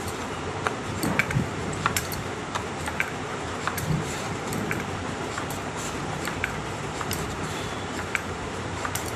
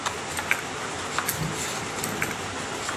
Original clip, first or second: second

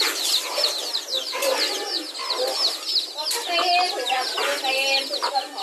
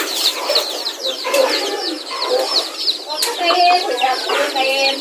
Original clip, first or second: first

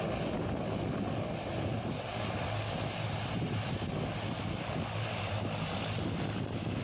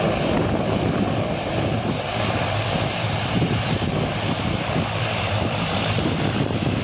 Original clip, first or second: first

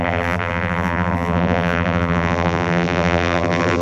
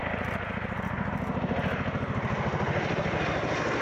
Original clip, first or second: second